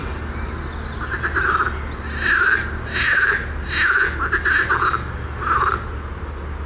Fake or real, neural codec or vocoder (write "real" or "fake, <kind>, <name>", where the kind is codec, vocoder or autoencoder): real